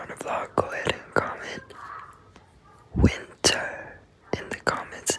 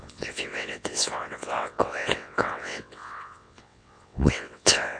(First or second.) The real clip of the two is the first